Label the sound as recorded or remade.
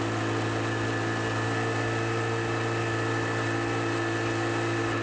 recorded